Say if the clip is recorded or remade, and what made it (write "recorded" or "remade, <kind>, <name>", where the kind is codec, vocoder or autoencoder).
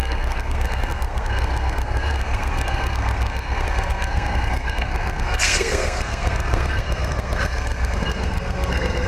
remade, codec, SNAC